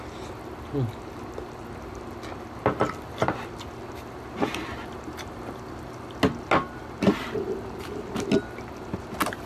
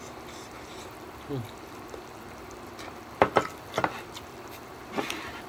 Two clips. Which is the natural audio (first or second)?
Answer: first